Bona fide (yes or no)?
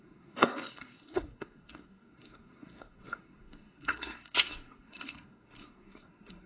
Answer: no